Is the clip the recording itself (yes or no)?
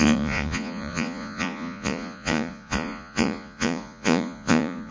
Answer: no